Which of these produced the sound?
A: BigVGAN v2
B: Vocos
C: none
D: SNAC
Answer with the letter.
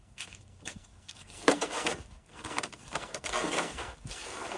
D